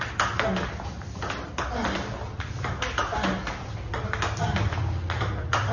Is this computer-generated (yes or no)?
no